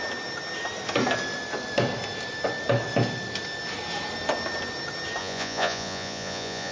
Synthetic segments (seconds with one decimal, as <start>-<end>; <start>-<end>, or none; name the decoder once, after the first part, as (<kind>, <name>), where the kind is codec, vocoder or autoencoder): 5.2-6.7 (vocoder, Vocos)